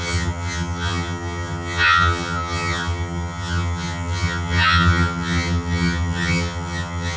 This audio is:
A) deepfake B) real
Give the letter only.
A